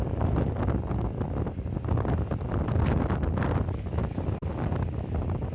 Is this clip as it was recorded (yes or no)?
yes